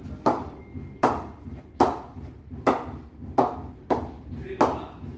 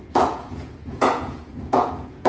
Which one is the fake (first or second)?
second